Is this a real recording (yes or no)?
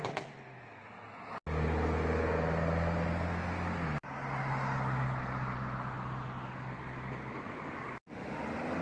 yes